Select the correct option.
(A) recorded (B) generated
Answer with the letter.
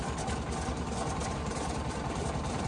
B